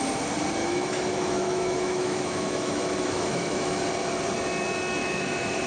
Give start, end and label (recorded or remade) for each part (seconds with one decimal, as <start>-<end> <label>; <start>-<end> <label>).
0.0-0.6 recorded; 0.6-3.8 remade; 3.8-5.0 recorded; 5.0-5.7 remade